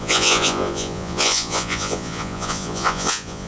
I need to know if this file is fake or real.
fake